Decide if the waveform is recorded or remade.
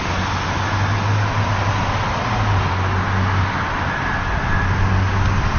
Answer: recorded